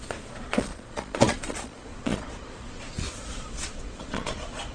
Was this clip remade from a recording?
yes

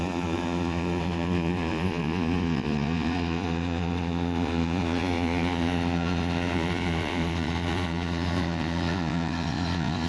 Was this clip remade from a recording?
yes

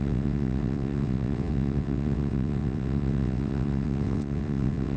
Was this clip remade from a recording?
yes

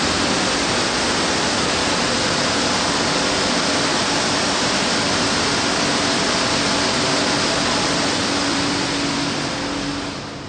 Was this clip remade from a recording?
no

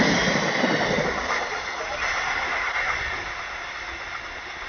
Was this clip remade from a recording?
no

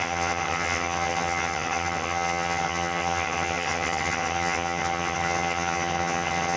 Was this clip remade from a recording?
yes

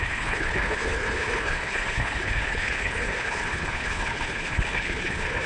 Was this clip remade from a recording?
yes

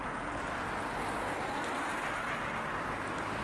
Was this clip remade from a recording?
no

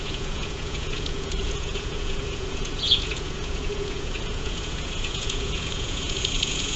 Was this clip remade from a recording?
yes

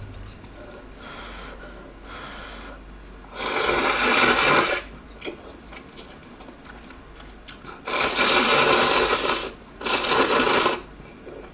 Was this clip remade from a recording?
no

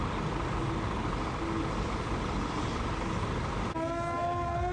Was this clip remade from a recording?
no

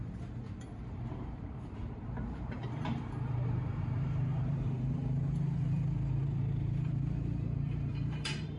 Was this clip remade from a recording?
yes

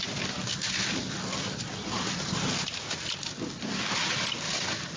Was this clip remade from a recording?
no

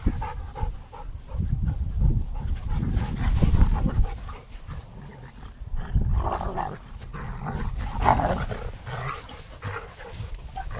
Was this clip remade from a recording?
no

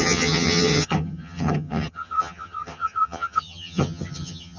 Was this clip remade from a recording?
yes